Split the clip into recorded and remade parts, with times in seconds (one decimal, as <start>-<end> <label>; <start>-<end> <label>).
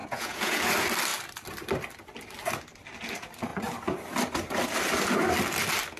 0.0-0.6 remade; 0.6-6.0 recorded